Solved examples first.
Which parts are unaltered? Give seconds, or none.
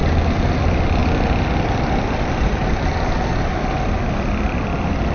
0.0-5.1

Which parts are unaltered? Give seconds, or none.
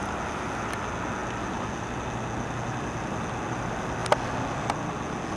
0.0-5.4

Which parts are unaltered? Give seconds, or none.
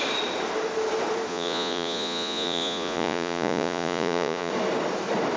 0.0-1.3; 4.5-5.4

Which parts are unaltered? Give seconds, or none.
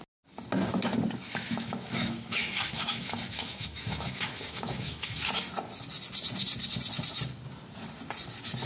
0.0-1.2; 5.3-8.7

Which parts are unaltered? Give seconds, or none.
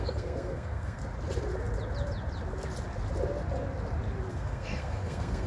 1.0-4.3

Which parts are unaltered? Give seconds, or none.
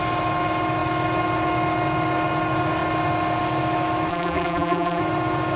0.0-4.1; 5.0-5.6